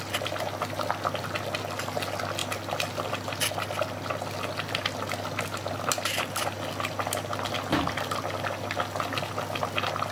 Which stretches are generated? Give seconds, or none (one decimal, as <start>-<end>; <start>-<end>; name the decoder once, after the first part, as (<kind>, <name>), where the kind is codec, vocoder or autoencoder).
none